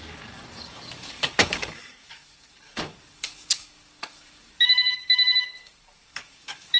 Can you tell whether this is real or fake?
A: fake